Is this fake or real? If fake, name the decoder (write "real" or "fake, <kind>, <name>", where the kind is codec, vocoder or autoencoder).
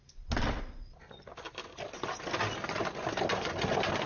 real